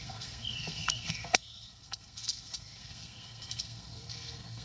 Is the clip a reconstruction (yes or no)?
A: yes